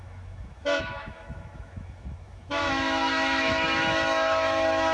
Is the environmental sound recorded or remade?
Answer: remade